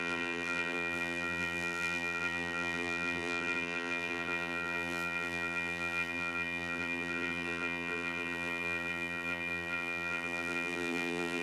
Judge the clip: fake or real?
fake